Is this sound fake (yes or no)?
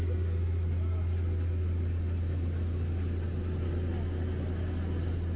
no